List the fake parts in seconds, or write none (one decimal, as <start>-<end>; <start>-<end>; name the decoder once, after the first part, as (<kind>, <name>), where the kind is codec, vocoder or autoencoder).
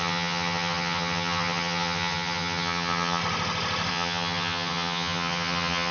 0.0-3.2 (vocoder, HiFi-GAN); 3.9-5.9